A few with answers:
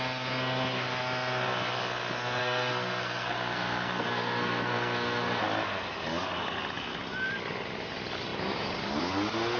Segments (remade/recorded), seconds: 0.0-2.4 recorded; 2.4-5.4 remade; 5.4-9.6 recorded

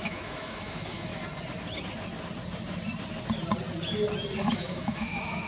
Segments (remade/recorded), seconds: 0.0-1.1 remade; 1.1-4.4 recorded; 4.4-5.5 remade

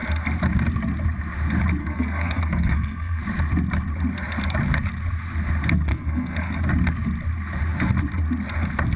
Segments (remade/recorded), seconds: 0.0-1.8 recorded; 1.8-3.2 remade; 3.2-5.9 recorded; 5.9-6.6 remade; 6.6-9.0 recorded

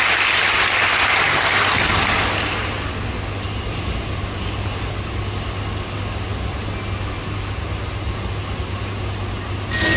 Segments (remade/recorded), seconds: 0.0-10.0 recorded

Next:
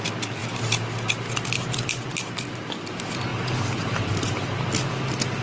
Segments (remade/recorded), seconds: 0.0-5.4 recorded

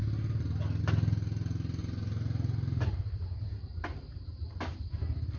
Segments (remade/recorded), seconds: 0.0-1.8 recorded; 1.8-5.0 remade; 5.0-5.4 recorded